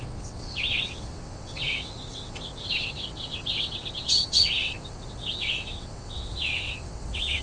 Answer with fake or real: fake